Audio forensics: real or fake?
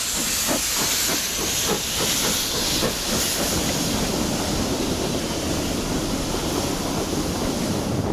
real